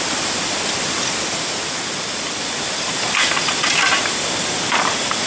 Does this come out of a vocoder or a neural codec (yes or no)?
no